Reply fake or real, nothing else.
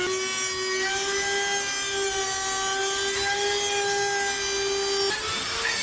real